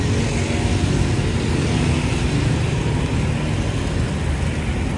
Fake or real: real